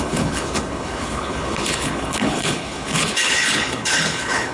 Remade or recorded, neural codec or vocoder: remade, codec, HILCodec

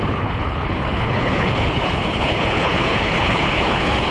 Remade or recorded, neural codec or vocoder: remade, codec, HILCodec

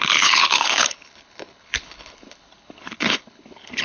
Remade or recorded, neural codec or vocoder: remade, codec, HILCodec